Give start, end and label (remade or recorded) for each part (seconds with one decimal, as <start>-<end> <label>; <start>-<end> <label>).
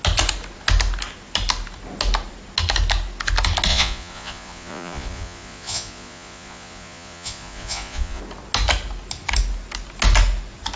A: 0.0-3.7 recorded; 3.7-8.2 remade; 8.2-10.8 recorded